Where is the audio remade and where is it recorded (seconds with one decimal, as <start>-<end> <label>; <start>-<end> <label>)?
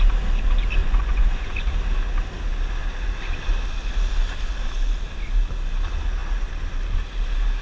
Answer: 0.0-0.8 recorded; 0.8-1.7 remade; 1.7-7.6 recorded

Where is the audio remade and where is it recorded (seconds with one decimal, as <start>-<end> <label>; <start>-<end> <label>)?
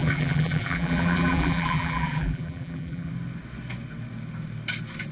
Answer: 0.0-3.1 remade; 3.1-5.1 recorded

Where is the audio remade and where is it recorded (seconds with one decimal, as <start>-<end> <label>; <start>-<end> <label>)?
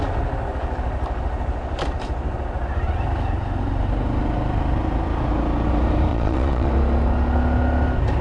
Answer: 0.0-6.1 recorded; 6.1-6.7 remade; 6.7-8.2 recorded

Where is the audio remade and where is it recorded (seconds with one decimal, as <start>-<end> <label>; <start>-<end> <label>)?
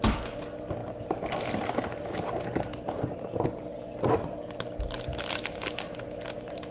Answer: 0.0-6.7 recorded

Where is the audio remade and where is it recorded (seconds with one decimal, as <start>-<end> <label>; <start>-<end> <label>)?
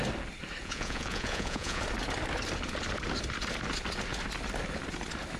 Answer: 0.0-0.6 recorded; 0.6-1.8 remade; 1.8-5.4 recorded